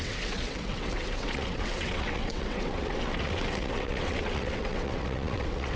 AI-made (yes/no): yes